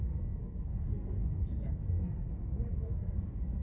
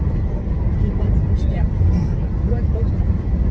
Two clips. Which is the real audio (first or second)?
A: second